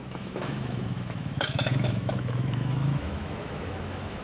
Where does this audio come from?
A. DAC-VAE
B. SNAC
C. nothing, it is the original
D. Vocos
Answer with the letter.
A